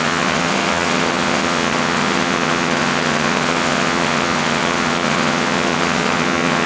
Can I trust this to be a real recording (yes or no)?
no